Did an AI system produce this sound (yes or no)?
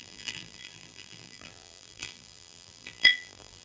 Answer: yes